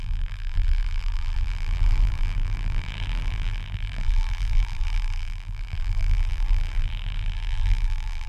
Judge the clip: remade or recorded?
remade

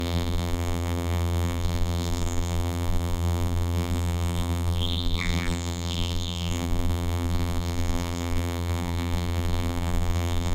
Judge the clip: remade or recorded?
remade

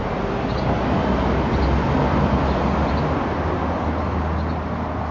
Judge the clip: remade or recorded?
recorded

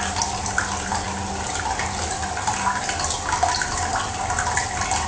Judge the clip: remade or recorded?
recorded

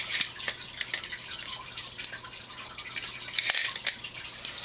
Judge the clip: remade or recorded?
recorded